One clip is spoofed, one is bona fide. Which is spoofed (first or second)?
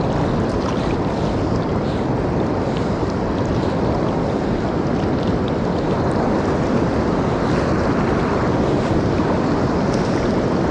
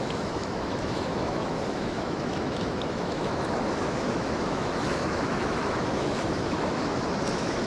second